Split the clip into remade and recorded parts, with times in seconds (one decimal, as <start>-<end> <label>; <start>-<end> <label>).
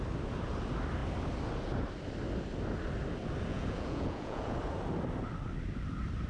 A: 0.0-3.5 recorded; 3.5-4.6 remade; 4.6-6.3 recorded